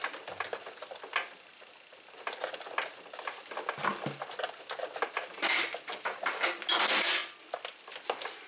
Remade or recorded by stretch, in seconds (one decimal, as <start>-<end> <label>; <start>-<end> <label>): 0.0-8.5 recorded